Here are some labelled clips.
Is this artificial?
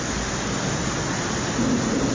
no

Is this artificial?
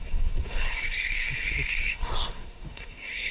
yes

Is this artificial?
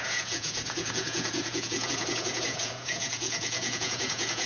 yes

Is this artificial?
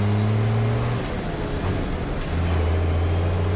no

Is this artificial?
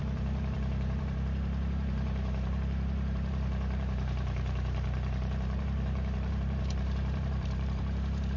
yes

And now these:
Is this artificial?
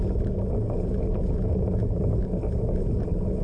no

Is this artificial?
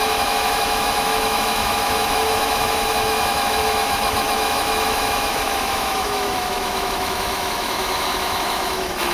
yes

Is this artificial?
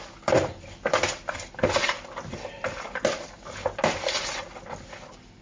no